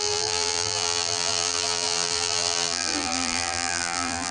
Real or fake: fake